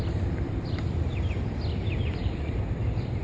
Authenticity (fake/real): real